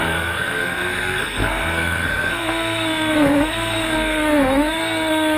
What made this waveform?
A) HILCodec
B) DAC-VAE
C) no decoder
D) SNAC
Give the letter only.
D